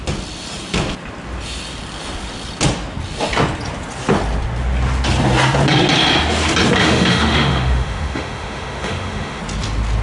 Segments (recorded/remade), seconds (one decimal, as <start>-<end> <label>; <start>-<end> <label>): 0.0-6.8 recorded; 6.8-9.4 remade; 9.4-10.0 recorded